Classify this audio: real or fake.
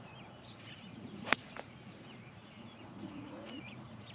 fake